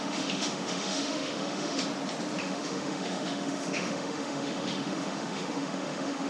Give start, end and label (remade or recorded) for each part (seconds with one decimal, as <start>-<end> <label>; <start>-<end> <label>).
0.0-1.8 remade; 1.8-2.4 recorded; 2.4-6.3 remade